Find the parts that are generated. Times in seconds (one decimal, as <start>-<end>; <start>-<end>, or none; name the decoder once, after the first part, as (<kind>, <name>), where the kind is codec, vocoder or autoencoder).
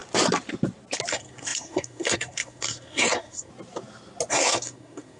1.1-3.5 (codec, SNAC); 4.3-5.2